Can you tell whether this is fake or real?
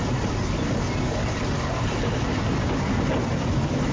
real